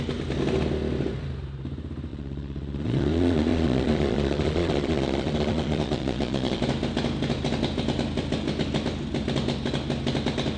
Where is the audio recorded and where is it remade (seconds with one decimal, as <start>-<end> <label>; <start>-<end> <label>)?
0.0-2.1 recorded; 2.1-6.6 remade; 6.6-10.6 recorded